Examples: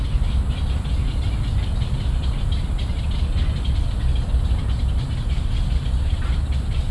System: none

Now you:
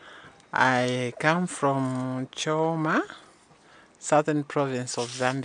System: none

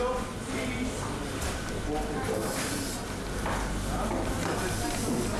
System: none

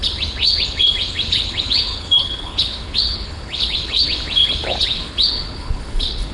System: codec, HILCodec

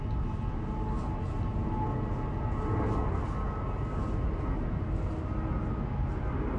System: none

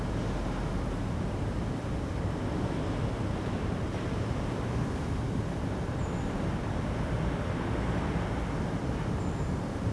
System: none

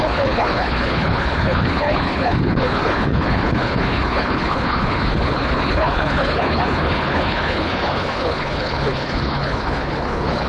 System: codec, HILCodec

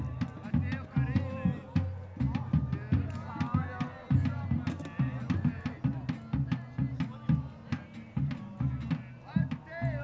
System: none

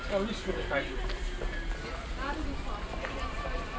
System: none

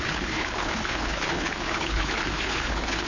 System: codec, HILCodec